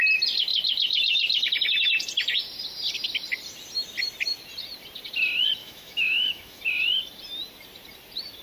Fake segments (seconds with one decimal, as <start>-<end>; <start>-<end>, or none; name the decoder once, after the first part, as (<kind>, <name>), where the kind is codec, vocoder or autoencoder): 5.6-6.6 (autoencoder, DAC-VAE)